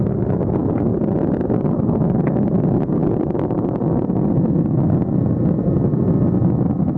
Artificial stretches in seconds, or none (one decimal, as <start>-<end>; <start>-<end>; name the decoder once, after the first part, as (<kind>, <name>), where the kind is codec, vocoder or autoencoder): 0.9-1.7 (vocoder, BigVGAN v2)